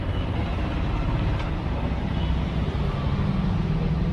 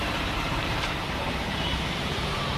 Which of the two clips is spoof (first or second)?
second